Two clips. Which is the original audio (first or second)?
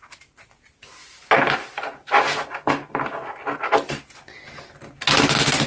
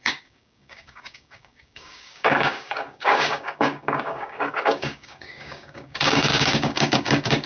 first